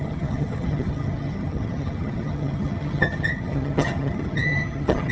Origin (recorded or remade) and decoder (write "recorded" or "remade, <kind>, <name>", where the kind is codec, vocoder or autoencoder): remade, vocoder, HiFi-GAN